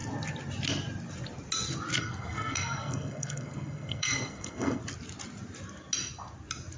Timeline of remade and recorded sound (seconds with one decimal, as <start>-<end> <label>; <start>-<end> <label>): 0.0-2.0 recorded; 2.0-4.8 remade; 4.8-6.8 recorded